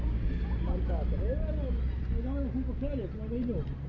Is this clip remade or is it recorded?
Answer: recorded